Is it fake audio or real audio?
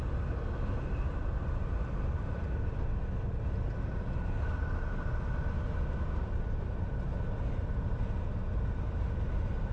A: real